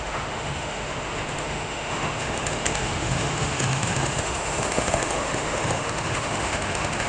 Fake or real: fake